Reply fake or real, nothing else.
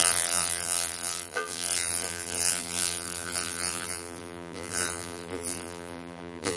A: fake